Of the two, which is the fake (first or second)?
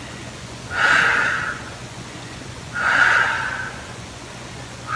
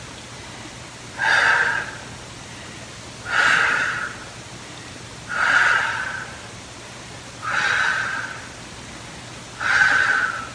first